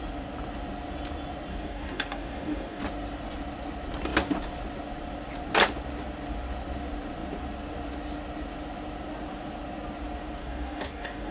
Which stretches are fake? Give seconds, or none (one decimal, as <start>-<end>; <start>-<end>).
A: 1.5-2.8; 10.4-11.3